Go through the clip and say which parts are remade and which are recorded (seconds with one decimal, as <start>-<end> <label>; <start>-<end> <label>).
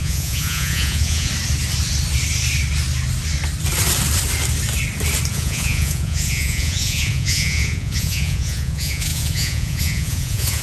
0.0-1.3 remade; 1.3-5.3 recorded; 5.3-10.6 remade